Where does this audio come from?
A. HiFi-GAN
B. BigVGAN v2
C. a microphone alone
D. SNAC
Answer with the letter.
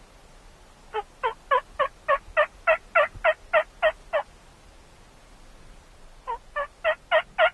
C